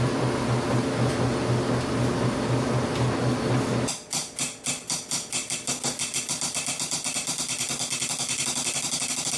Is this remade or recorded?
recorded